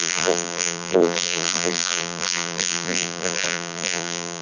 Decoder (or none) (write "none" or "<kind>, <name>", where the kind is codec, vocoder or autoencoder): vocoder, BigVGAN v2